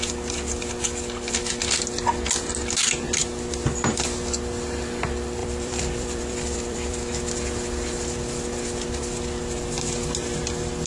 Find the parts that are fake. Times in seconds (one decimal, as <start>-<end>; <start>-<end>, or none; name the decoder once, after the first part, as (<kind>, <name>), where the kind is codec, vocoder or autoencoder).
5.4-7.0 (vocoder, BigVGAN v2)